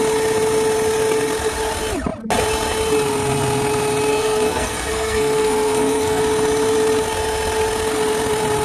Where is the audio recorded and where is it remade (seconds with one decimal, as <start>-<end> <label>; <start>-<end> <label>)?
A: 0.0-4.1 recorded; 4.1-6.2 remade; 6.2-8.6 recorded